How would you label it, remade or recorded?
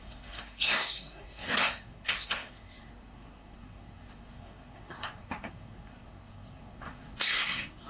remade